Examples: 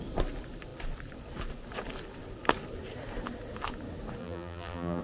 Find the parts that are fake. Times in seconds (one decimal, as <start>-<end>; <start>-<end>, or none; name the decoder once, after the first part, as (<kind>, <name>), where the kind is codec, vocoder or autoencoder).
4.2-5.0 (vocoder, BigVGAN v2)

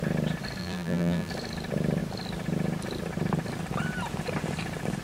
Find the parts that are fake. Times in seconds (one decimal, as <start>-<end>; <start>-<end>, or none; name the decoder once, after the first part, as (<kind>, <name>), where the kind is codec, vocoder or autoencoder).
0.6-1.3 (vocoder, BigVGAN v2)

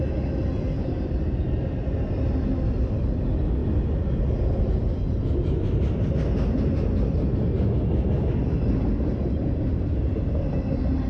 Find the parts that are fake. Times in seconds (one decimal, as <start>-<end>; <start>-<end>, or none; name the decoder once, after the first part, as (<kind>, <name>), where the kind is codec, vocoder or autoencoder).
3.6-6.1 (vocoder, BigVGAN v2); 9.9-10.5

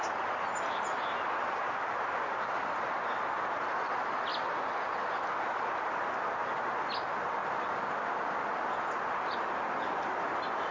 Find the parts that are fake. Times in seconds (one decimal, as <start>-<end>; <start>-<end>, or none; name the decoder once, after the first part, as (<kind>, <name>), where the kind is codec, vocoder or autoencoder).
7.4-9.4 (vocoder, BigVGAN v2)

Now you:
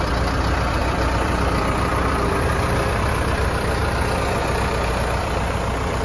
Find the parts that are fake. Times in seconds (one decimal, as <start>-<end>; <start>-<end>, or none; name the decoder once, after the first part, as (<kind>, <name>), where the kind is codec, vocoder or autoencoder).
0.0-3.8 (vocoder, BigVGAN v2); 4.9-6.0

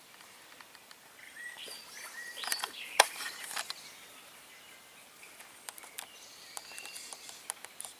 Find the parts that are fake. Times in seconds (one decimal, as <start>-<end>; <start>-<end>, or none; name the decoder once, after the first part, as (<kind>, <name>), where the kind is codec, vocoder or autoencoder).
1.2-3.7 (vocoder, BigVGAN v2)

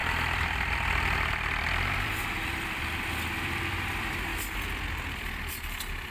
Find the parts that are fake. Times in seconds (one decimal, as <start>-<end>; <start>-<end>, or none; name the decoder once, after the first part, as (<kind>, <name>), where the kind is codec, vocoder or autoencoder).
0.0-6.1 (vocoder, BigVGAN v2)

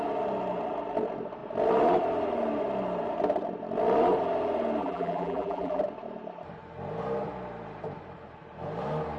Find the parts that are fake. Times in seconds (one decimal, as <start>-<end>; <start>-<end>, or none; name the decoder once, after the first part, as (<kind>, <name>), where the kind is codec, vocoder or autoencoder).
4.8-5.8 (vocoder, BigVGAN v2)